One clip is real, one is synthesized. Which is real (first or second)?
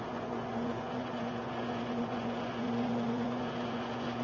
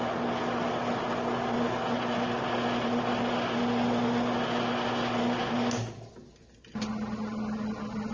second